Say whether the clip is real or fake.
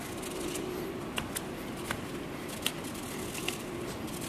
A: real